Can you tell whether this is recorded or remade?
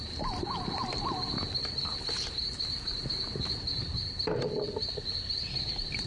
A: recorded